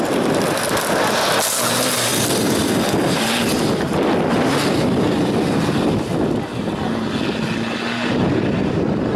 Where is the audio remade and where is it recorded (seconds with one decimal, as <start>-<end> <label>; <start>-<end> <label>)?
0.0-9.2 recorded